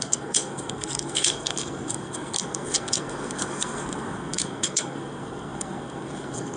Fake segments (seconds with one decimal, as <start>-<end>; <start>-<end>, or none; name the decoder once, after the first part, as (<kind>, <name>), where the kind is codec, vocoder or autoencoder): 0.0-6.6 (codec, SNAC)